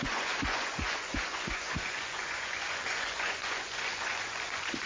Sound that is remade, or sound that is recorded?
remade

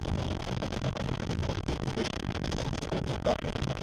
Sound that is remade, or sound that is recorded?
remade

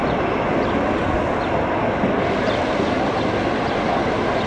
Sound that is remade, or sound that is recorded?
recorded